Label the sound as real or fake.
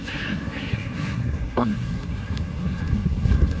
fake